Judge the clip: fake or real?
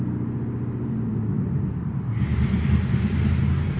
real